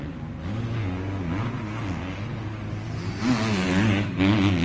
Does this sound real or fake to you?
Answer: real